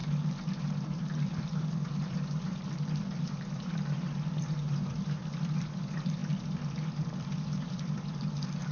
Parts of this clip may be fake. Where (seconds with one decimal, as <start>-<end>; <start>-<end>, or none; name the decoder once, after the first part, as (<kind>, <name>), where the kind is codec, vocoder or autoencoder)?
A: 1.3-6.2 (vocoder, BigVGAN v2); 7.0-8.7